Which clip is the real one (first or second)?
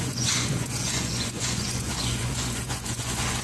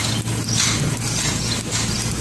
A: second